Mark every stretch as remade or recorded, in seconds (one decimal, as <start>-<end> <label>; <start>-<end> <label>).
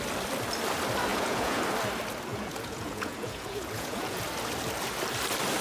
0.0-1.1 recorded; 1.1-1.6 remade; 1.6-2.3 recorded; 2.3-4.2 remade; 4.2-5.6 recorded